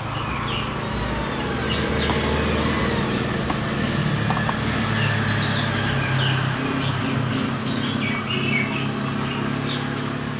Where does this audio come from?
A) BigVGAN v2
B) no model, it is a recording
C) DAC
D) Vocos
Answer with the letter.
B